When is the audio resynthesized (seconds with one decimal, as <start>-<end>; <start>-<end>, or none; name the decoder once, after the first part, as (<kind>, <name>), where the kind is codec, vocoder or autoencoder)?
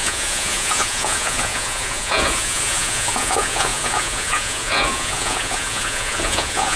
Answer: 0.0-6.8 (vocoder, Vocos)